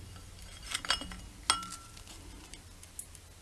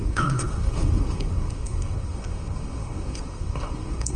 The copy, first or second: second